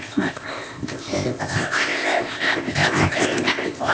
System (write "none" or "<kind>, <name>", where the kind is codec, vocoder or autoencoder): codec, ZipCodec